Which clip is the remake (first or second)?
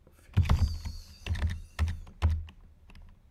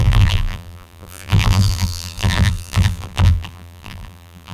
second